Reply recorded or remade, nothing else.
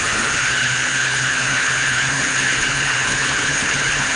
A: remade